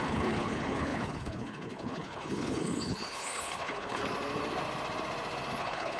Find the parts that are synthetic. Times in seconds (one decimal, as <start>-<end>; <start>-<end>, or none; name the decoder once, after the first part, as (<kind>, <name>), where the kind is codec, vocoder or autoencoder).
0.0-4.0 (codec, HILCodec); 5.6-6.0